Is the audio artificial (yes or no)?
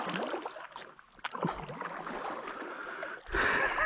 no